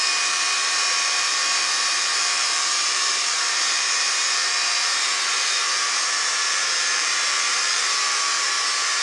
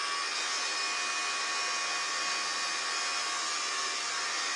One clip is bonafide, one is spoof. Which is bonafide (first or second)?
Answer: second